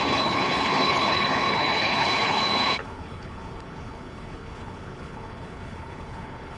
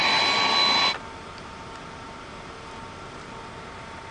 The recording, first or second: second